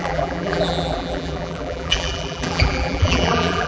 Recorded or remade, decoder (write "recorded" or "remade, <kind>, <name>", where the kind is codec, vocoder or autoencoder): remade, vocoder, BigVGAN v2